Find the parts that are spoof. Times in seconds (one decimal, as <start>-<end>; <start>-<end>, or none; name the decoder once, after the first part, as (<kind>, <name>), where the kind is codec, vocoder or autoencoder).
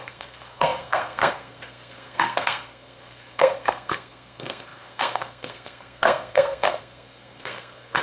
0.0-8.0 (codec, SNAC)